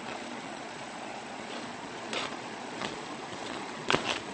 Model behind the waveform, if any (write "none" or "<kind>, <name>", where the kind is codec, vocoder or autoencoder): vocoder, Vocos